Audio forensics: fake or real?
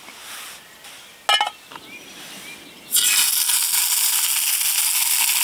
real